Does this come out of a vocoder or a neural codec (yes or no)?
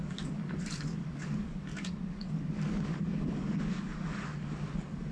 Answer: yes